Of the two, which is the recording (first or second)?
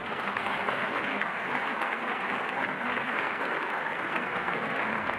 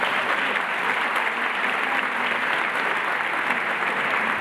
second